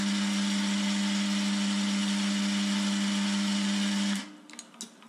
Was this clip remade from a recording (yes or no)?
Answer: no